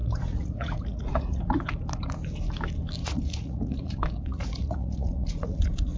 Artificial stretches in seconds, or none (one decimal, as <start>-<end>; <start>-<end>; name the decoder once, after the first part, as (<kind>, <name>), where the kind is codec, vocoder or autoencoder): 0.0-1.6 (vocoder, Vocos); 3.0-6.0